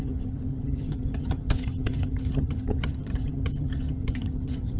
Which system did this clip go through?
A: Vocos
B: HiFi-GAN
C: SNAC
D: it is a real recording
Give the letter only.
B